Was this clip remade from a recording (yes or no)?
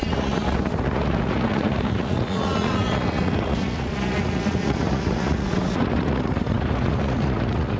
yes